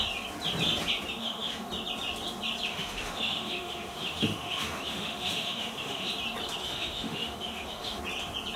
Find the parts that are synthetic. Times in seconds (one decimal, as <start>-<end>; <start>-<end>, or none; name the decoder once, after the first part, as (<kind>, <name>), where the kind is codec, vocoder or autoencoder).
1.2-1.7 (autoencoder, DAC-VAE); 2.7-6.1; 6.6-8.0